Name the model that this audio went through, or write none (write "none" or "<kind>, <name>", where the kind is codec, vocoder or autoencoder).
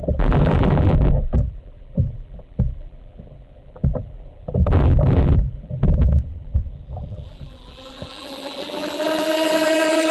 vocoder, BigVGAN v2